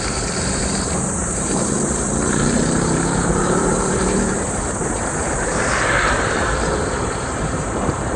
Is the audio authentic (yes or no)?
no